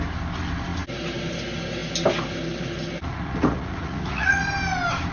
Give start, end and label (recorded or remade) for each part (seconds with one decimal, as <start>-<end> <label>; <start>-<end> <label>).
0.0-3.1 recorded; 3.1-4.5 remade; 4.5-5.1 recorded